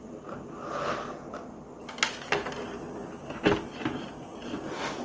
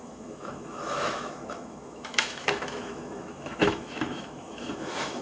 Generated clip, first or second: second